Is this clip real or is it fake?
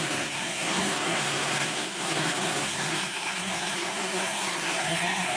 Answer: fake